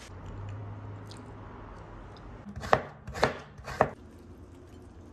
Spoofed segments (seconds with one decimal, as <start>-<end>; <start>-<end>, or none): none